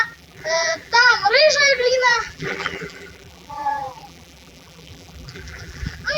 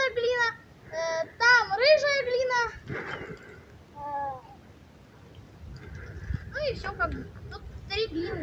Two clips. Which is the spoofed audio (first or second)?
first